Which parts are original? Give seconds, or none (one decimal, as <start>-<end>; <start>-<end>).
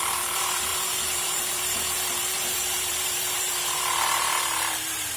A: none